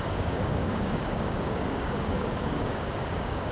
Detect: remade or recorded remade